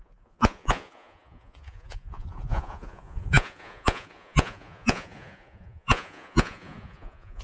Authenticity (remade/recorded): remade